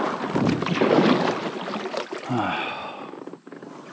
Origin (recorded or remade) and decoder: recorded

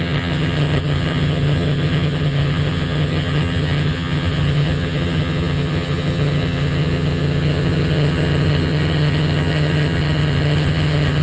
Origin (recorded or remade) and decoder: remade, vocoder, HiFi-GAN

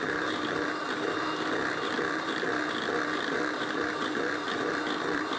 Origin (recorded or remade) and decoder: remade, vocoder, BigVGAN v2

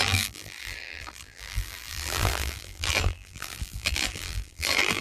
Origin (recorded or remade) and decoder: remade, vocoder, BigVGAN v2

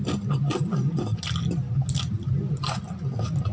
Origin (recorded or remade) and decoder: recorded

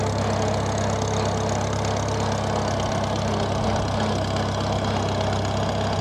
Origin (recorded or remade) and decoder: recorded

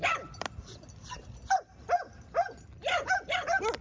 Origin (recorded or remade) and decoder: recorded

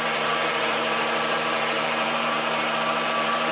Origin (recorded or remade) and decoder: remade, vocoder, BigVGAN v2